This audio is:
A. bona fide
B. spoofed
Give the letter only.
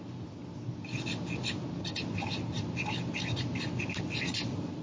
A